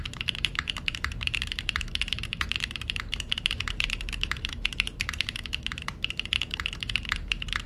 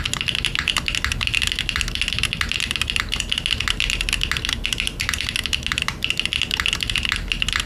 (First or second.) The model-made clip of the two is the first